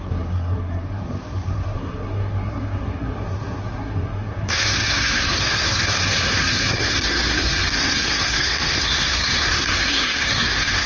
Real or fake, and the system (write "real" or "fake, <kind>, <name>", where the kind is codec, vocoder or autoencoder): fake, codec, SNAC